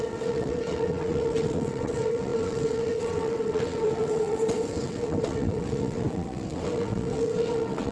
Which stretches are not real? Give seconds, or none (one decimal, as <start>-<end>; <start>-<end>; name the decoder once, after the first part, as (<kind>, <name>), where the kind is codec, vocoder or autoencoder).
0.0-7.9 (vocoder, WaveNeXt)